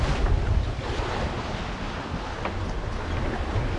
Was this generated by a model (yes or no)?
no